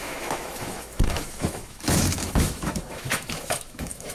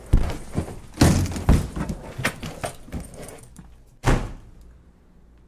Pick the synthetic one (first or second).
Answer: first